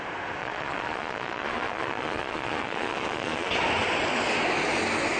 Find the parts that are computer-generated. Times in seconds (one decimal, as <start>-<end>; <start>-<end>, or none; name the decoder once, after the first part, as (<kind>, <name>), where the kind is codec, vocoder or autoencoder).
0.4-3.5 (vocoder, Vocos)